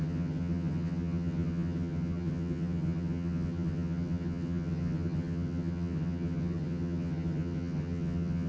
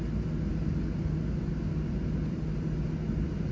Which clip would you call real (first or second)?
second